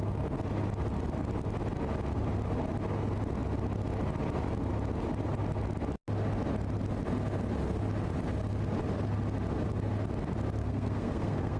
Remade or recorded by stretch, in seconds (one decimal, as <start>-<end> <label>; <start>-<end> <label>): 0.0-10.6 recorded; 10.6-11.6 remade